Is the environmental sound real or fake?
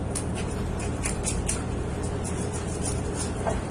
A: fake